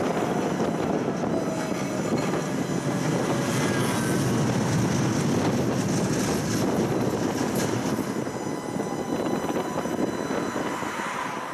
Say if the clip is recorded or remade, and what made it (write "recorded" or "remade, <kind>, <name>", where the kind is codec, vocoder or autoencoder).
recorded